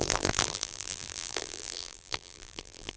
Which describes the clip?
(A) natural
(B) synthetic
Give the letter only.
B